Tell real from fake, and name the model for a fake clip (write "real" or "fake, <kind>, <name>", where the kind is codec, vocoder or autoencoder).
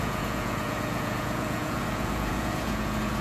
fake, vocoder, Vocos